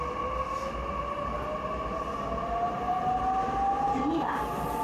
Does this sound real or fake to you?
real